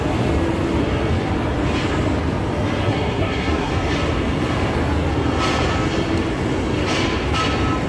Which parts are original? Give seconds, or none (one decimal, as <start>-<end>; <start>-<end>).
0.0-2.9; 3.7-7.9